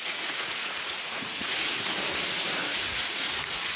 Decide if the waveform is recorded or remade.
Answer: remade